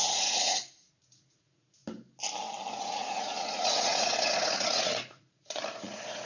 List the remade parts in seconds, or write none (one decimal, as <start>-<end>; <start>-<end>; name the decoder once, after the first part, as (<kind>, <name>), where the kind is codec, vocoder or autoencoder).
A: 0.0-1.8 (vocoder, Vocos); 2.7-6.3